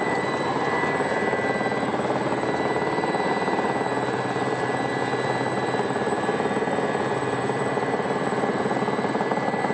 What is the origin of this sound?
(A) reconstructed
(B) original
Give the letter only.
B